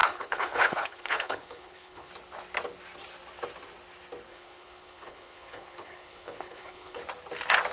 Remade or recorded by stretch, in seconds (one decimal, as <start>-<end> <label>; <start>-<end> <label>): 0.0-2.1 remade; 2.1-4.3 recorded; 4.3-7.0 remade; 7.0-7.7 recorded